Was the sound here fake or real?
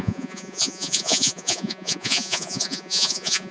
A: fake